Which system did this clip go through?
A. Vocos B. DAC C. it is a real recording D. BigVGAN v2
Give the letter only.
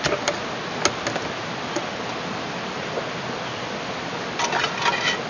C